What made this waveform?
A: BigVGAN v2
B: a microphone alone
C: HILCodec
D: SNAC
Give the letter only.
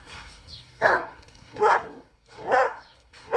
D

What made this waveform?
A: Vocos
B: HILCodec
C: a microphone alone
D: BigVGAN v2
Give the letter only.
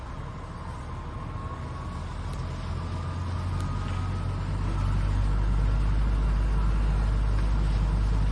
C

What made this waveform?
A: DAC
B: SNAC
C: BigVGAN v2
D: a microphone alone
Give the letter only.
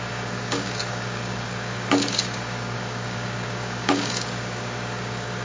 A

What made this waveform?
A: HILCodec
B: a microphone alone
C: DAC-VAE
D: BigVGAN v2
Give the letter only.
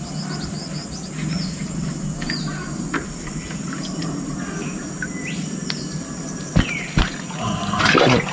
B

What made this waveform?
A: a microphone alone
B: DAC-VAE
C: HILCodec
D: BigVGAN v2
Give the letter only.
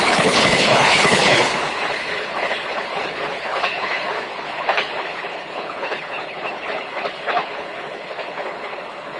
C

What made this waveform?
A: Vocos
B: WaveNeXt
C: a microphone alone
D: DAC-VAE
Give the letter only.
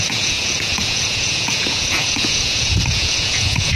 A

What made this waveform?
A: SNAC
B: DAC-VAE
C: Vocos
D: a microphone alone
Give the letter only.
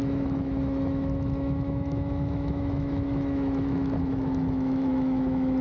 B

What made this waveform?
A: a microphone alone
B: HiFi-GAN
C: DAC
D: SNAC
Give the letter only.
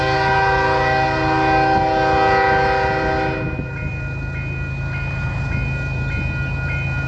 A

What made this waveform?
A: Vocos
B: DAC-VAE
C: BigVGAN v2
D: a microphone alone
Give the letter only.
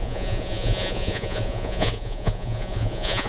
A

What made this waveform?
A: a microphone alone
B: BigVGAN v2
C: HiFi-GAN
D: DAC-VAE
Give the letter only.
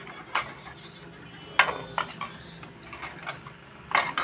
A